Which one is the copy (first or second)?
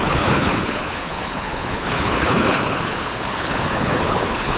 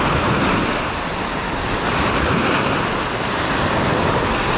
first